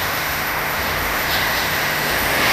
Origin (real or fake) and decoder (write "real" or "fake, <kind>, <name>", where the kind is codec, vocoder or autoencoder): fake, autoencoder, DAC-VAE